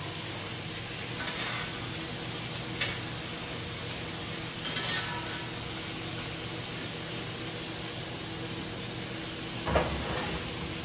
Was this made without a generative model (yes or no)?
yes